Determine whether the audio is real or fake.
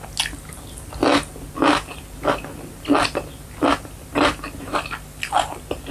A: real